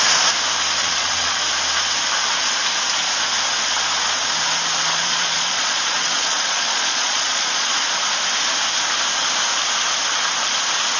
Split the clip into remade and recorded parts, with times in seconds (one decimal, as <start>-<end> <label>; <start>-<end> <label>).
0.0-0.8 recorded; 0.8-1.4 remade; 1.4-5.0 recorded; 5.0-7.7 remade; 7.7-11.0 recorded